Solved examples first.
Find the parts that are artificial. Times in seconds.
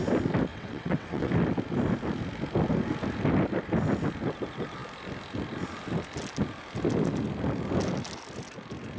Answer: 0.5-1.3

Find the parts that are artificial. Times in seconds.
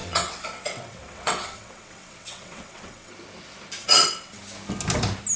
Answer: 0.0-3.1; 3.8-4.4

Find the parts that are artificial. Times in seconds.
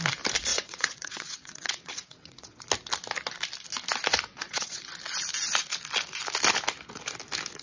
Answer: 0.5-2.6; 4.3-4.8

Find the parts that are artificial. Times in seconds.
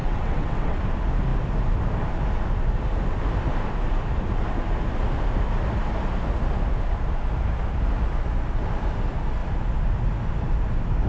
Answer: 0.0-0.8